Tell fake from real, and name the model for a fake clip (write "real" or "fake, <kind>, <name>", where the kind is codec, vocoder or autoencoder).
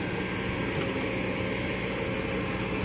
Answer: real